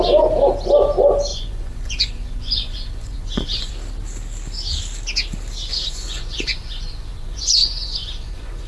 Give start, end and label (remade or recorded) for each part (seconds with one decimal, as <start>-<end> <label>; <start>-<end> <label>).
0.0-1.3 recorded; 1.3-3.7 remade; 3.7-5.7 recorded; 5.7-8.7 remade